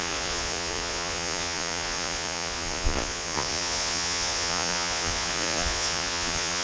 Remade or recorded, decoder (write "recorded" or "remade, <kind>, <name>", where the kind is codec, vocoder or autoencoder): remade, vocoder, Vocos